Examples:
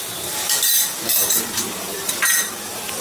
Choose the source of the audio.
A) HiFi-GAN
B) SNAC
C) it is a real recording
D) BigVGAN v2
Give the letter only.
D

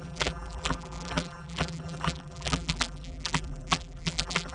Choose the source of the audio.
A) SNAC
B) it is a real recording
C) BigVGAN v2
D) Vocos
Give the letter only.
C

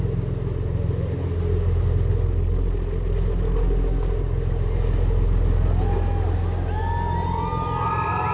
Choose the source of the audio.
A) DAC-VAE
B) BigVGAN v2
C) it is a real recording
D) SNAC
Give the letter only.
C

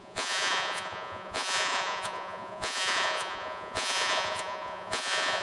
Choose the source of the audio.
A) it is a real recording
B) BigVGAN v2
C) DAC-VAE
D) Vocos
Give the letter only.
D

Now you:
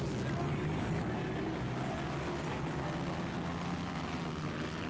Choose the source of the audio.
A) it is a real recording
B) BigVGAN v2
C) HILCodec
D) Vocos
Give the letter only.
A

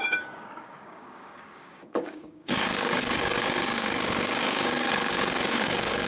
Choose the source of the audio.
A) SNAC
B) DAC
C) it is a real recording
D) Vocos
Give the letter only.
B